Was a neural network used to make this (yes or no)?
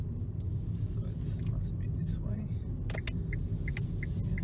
no